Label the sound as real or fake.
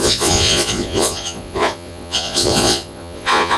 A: fake